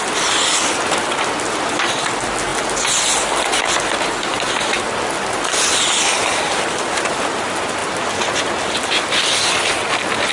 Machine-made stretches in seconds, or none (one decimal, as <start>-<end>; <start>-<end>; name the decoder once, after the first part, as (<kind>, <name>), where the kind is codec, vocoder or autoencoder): none